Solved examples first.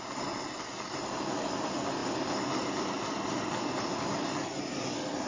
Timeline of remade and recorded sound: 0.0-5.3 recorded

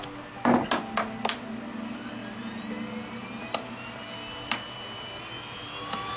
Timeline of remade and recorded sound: 0.0-6.2 recorded

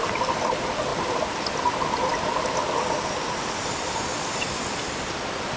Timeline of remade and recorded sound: 0.0-5.6 recorded

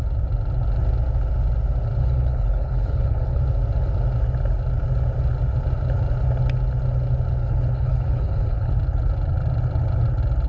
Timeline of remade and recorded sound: 0.0-2.0 recorded; 2.0-3.4 remade; 3.4-7.4 recorded; 7.4-8.7 remade; 8.7-10.5 recorded

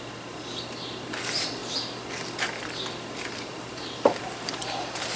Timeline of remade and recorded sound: 0.0-5.2 recorded

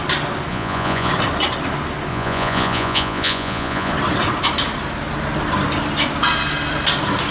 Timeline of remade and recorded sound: 0.0-0.5 recorded; 0.5-1.1 remade; 1.1-2.1 recorded; 2.1-3.9 remade; 3.9-7.3 recorded

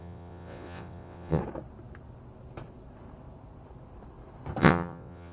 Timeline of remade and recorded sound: 0.0-1.4 remade; 1.4-4.6 recorded; 4.6-5.3 remade

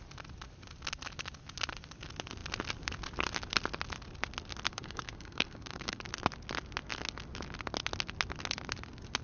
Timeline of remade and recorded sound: 0.0-4.7 recorded; 4.7-6.0 remade; 6.0-9.2 recorded